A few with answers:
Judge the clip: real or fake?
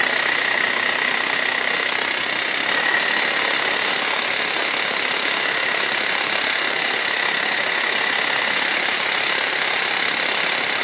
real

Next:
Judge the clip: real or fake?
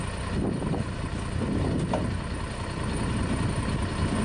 real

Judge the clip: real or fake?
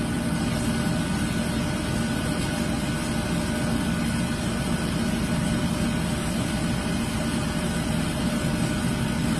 real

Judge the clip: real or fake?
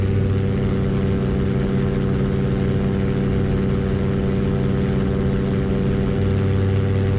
real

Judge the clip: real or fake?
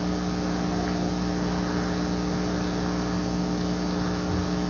real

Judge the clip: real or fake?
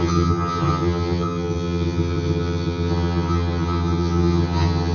fake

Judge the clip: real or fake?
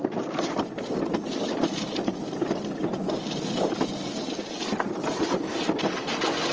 real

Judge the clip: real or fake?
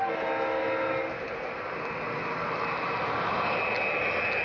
real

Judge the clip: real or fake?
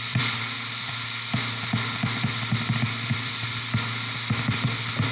real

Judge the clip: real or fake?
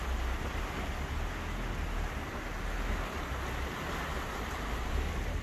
real